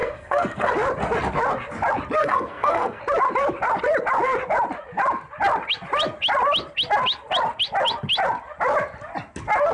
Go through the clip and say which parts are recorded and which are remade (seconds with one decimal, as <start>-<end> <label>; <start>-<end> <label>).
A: 0.0-0.7 remade; 0.7-2.2 recorded; 2.2-3.0 remade; 3.0-9.7 recorded